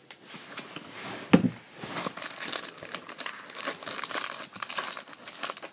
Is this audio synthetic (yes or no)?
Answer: no